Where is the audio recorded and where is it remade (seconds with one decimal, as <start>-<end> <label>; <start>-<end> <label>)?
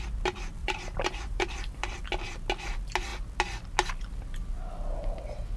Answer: 0.0-0.6 recorded; 0.6-2.0 remade; 2.0-5.6 recorded